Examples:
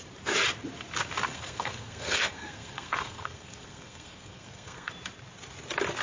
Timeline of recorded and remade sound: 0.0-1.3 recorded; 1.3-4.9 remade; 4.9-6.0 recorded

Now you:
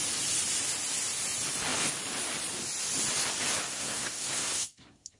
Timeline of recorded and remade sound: 0.0-3.7 recorded; 3.7-5.2 remade

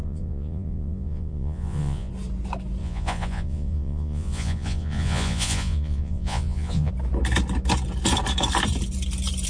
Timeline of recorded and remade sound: 0.0-2.1 remade; 2.1-2.8 recorded; 2.8-6.9 remade; 6.9-9.5 recorded

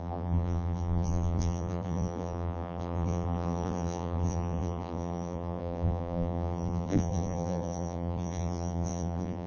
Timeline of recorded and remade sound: 0.0-9.5 remade

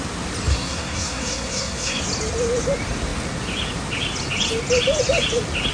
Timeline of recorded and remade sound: 0.0-0.5 recorded; 0.5-2.0 remade; 2.0-5.7 recorded